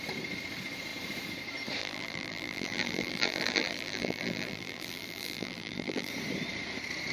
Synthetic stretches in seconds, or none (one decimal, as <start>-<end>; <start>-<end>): 1.8-6.1